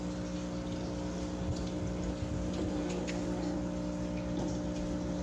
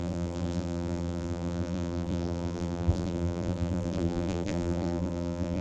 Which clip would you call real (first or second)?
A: first